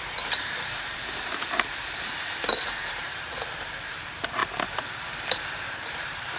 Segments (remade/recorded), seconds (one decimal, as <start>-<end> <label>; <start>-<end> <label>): 0.0-4.4 remade; 4.4-5.3 recorded; 5.3-6.4 remade